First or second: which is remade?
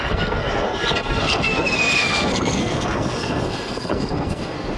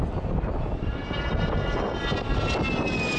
first